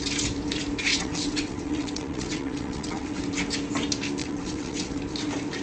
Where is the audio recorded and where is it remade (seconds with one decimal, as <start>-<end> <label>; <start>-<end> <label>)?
0.0-0.9 recorded; 0.9-3.2 remade; 3.2-4.2 recorded; 4.2-5.0 remade; 5.0-5.6 recorded